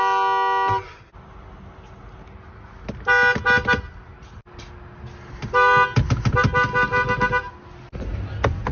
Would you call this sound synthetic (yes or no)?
no